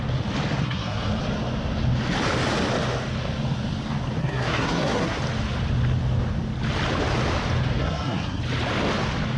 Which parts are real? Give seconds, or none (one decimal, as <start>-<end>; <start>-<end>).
0.0-0.6; 1.2-4.2; 5.2-7.8; 8.4-9.4